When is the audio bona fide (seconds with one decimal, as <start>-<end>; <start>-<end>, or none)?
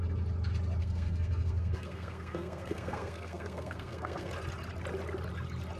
0.0-0.8; 4.3-5.8